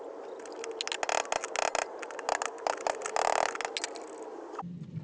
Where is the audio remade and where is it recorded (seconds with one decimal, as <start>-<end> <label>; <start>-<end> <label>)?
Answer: 0.0-5.0 recorded